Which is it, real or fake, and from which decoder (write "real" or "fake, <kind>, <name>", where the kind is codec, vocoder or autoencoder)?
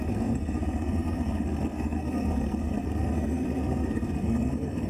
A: fake, codec, SNAC